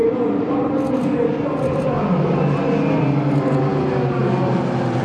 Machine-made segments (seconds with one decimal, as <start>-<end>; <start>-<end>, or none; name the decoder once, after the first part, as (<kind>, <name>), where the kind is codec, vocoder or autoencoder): none

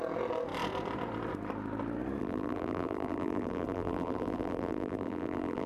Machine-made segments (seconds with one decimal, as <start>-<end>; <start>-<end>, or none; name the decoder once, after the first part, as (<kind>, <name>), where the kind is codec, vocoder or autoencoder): 2.2-5.7 (vocoder, BigVGAN v2)

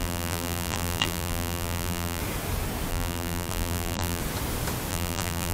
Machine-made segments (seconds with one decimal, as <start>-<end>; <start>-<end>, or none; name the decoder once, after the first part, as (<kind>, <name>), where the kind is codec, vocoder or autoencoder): 0.0-2.2 (vocoder, BigVGAN v2); 2.9-4.2; 4.9-5.5

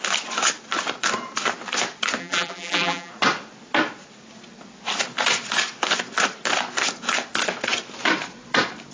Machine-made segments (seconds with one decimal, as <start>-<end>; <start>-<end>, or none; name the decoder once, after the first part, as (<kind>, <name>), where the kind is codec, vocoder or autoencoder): 2.2-3.1 (vocoder, BigVGAN v2)

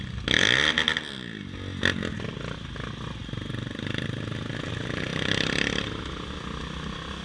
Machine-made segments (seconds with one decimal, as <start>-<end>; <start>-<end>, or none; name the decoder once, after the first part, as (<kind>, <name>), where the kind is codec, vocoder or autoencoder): 5.1-5.6 (vocoder, BigVGAN v2)

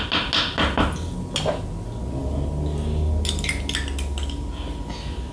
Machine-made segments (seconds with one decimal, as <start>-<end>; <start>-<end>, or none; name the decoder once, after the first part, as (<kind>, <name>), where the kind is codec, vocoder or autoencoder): none